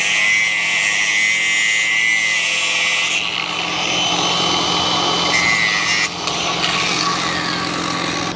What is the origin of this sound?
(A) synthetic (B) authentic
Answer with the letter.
B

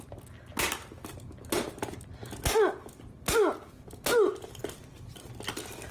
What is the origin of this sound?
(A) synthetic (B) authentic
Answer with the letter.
B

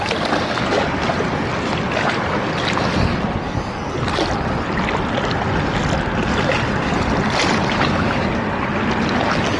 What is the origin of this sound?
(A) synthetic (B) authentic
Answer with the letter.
B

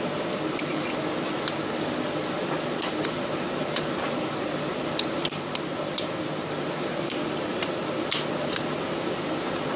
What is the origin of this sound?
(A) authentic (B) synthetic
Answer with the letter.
A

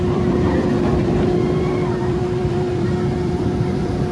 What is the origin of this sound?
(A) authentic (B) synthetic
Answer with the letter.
B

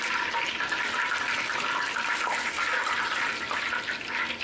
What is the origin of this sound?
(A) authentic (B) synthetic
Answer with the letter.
A